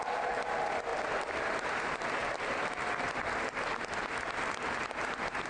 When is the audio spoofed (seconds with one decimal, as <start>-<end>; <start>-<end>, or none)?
none